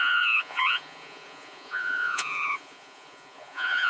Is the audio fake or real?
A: fake